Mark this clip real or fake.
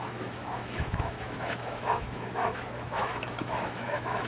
fake